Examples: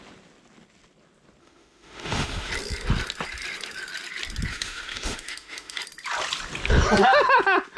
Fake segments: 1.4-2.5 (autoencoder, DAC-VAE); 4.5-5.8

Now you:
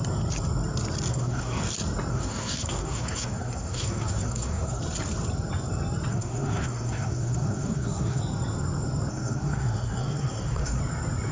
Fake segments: 1.1-1.6 (codec, SNAC); 2.1-4.8; 6.1-8.2; 9.1-10.8